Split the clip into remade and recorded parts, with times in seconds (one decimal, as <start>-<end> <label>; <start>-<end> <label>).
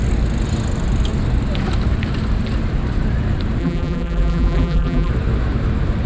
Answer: 0.0-3.6 recorded; 3.6-5.1 remade; 5.1-6.1 recorded